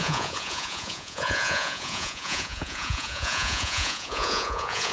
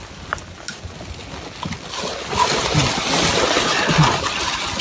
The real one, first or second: second